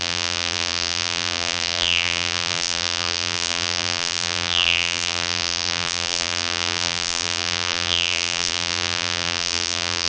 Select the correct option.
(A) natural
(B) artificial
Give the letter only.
B